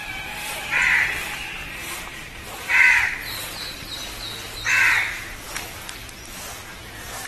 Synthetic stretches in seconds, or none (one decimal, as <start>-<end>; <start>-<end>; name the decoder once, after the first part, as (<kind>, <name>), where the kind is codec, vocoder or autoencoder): none